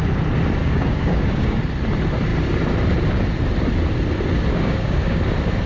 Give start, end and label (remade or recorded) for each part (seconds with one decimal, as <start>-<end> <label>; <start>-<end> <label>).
0.0-0.6 recorded; 0.6-1.6 remade; 1.6-4.5 recorded; 4.5-5.2 remade; 5.2-5.7 recorded